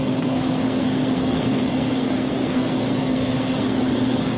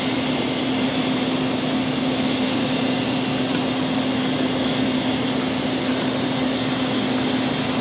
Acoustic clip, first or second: second